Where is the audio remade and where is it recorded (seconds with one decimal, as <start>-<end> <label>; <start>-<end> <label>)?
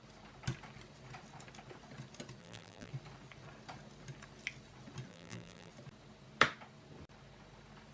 0.0-2.4 recorded; 2.4-2.9 remade; 2.9-5.1 recorded; 5.1-5.7 remade; 5.7-7.9 recorded